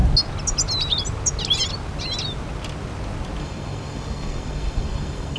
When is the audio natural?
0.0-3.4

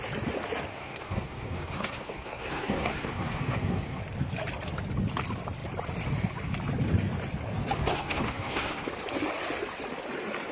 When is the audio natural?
0.0-0.7; 4.0-7.8; 8.9-10.5

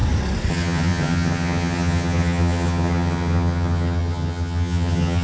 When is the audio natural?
0.0-0.5

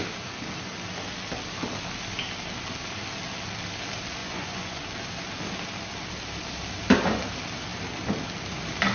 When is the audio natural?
0.0-4.2; 4.8-8.9

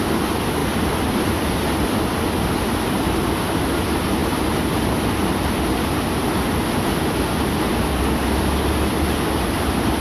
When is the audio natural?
0.0-10.0